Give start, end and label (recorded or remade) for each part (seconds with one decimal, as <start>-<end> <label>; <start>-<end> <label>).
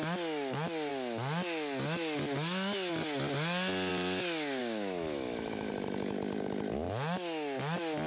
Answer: 0.0-4.6 recorded; 4.6-5.7 remade; 5.7-8.1 recorded